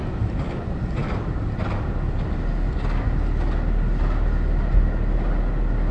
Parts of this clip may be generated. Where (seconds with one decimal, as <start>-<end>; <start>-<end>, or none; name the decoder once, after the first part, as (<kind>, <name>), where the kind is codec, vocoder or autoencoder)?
none